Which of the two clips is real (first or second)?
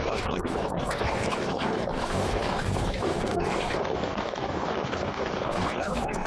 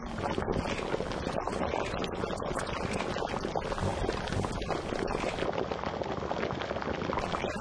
second